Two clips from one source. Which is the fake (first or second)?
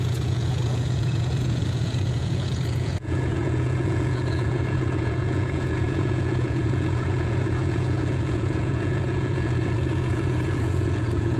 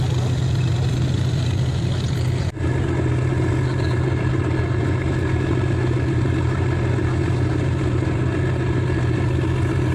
first